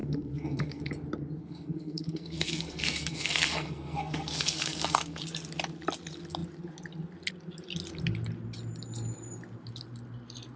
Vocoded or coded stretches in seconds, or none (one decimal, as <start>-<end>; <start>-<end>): 0.0-0.8; 1.4-5.2